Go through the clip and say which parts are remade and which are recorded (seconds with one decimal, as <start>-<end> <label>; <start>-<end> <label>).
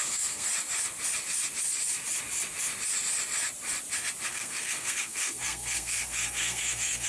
0.0-0.5 remade; 0.5-4.3 recorded; 4.3-7.1 remade